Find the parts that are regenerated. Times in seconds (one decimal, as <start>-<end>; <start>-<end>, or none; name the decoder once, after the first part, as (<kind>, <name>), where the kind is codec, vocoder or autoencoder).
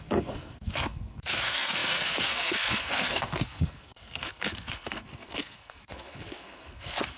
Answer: 0.0-7.2 (codec, SNAC)